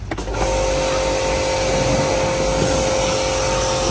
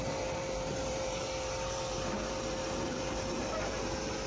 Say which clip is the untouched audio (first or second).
first